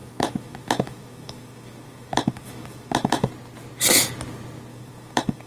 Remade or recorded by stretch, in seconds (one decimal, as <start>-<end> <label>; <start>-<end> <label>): 0.0-3.3 remade; 3.3-4.7 recorded; 4.7-5.5 remade